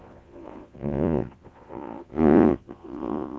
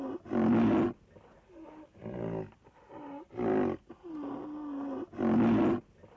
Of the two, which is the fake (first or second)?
first